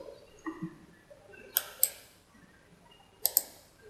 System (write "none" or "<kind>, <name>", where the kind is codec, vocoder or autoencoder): none